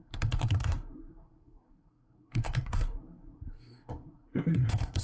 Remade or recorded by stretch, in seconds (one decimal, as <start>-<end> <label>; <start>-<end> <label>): 0.0-5.0 remade